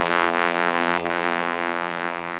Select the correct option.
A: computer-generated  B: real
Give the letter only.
A